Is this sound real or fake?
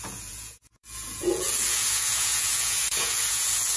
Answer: fake